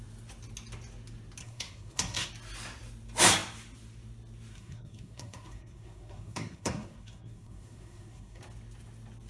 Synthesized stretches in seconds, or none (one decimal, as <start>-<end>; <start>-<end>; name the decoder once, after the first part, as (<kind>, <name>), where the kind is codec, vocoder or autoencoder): 1.4-2.3 (codec, SNAC); 4.5-8.4